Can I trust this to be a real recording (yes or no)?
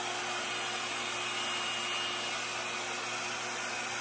yes